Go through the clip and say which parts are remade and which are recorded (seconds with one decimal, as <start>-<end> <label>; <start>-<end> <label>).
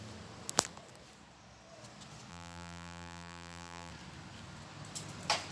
0.0-2.3 recorded; 2.3-3.9 remade; 3.9-5.5 recorded